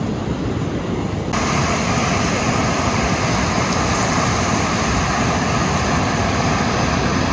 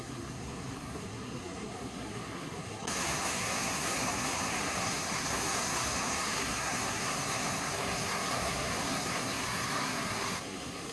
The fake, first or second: second